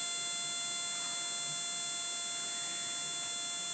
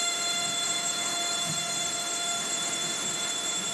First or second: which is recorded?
first